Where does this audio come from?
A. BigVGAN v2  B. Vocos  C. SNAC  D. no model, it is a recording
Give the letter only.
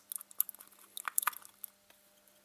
D